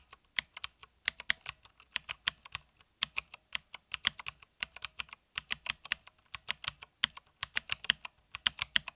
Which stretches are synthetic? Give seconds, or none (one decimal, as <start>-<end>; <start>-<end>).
none